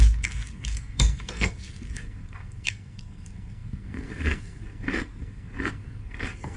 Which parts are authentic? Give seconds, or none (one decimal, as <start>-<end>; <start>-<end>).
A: none